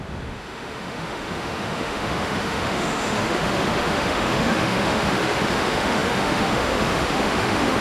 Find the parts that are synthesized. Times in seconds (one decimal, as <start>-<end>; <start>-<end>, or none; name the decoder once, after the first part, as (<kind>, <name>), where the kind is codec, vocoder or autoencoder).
0.0-7.8 (autoencoder, DAC-VAE)

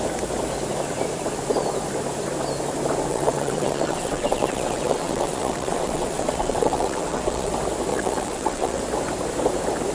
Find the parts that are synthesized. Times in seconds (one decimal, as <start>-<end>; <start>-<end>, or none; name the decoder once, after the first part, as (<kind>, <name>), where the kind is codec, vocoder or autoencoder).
3.1-7.5 (vocoder, WaveNeXt); 7.9-8.8

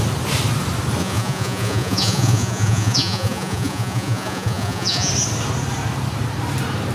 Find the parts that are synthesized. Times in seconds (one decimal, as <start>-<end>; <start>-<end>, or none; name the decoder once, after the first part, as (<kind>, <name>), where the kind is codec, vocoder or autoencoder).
1.0-5.1 (vocoder, Vocos)

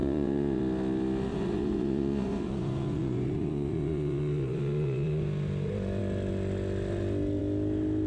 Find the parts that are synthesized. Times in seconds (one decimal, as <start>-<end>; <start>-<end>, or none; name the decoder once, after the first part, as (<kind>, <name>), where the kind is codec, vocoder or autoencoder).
0.0-0.6 (vocoder, Vocos); 1.3-5.2

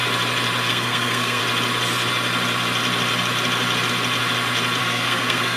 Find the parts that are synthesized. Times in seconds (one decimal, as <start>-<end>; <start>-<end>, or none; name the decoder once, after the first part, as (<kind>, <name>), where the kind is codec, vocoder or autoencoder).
0.7-1.4 (codec, SNAC); 4.8-5.6

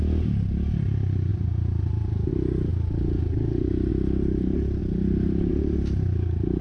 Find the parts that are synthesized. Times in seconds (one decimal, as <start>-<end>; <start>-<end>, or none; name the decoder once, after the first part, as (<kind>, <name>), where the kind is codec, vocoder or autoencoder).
1.3-2.3 (vocoder, BigVGAN v2); 4.8-5.5

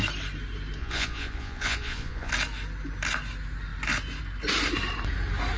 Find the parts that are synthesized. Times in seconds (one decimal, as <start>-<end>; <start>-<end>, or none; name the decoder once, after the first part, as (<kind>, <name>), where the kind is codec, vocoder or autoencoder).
0.8-2.3 (vocoder, Vocos)